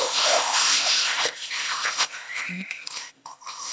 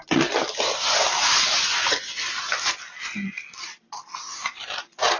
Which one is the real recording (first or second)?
second